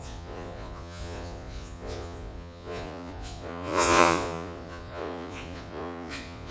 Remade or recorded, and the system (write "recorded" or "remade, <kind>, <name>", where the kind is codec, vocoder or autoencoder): remade, vocoder, Vocos